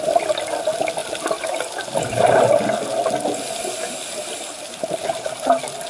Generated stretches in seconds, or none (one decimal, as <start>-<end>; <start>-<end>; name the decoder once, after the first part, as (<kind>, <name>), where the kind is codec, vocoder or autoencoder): none